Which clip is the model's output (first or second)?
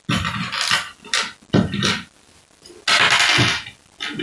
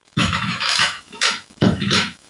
second